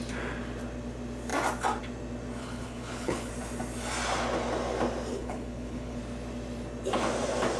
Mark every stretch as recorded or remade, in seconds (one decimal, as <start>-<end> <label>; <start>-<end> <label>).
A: 0.0-2.4 recorded; 2.4-3.3 remade; 3.3-5.1 recorded; 5.1-6.0 remade; 6.0-7.6 recorded